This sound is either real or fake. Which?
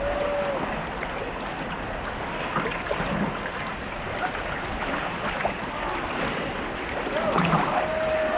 real